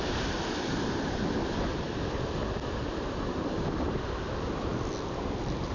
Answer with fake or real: real